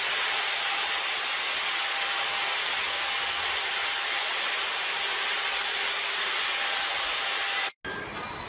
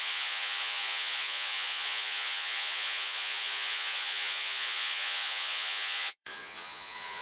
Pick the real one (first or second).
first